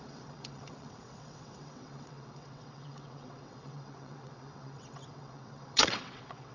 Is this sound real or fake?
fake